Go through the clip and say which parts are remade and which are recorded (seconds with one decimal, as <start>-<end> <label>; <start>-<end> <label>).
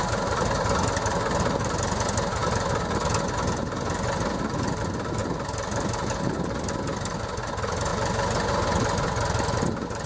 0.0-10.1 recorded